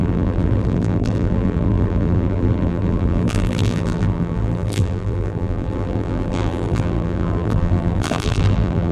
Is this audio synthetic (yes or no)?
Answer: yes